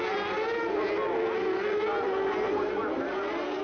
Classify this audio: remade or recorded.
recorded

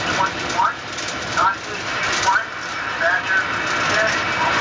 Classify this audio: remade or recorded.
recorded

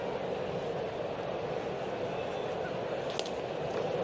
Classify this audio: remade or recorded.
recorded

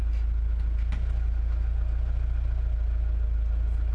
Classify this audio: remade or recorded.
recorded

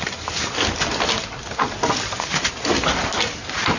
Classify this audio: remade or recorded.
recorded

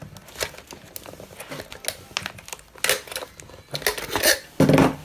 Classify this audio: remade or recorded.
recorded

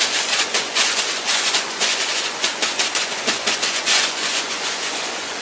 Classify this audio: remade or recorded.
remade